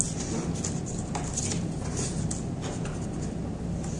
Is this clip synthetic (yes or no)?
no